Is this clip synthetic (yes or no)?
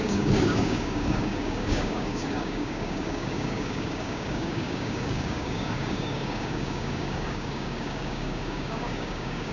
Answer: yes